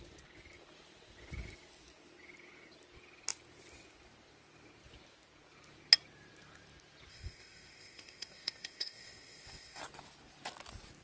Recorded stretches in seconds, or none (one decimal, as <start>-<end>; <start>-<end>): 0.0-7.1; 9.8-11.0